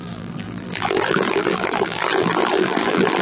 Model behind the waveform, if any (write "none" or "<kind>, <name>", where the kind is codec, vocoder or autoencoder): vocoder, BigVGAN v2